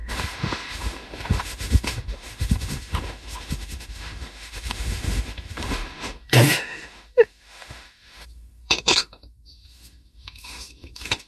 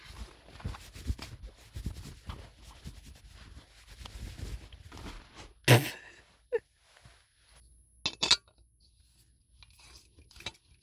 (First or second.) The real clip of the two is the second